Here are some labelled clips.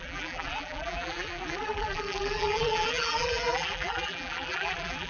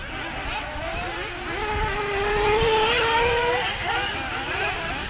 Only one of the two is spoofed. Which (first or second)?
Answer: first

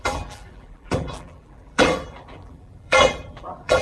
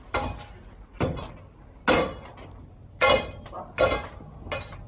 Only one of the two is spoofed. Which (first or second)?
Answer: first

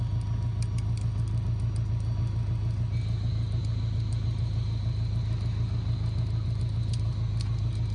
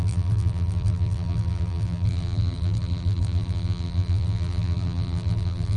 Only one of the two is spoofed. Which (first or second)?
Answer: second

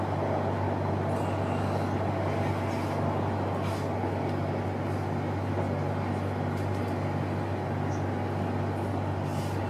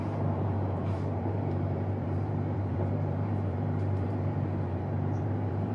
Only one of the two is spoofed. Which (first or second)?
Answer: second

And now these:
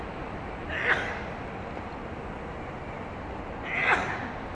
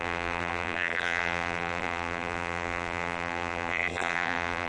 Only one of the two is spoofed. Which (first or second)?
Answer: second